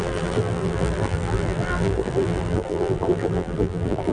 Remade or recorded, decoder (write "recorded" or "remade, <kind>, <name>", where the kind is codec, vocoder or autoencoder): remade, vocoder, BigVGAN v2